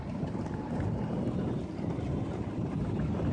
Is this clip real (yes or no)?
yes